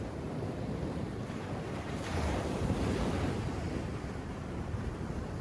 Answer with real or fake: fake